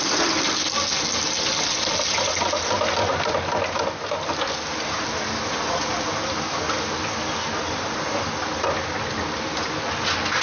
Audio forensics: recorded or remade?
recorded